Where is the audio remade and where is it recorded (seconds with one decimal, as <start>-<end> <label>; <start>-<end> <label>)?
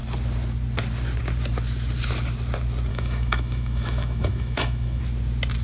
0.0-2.9 recorded; 2.9-5.0 remade; 5.0-5.6 recorded